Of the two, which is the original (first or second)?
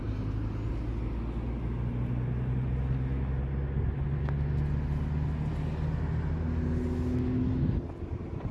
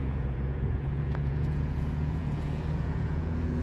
first